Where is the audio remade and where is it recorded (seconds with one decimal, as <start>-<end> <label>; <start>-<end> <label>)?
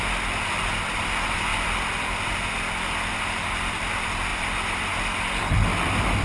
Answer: 0.0-6.2 recorded